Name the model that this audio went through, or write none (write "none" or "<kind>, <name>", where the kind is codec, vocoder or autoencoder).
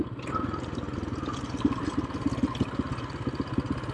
none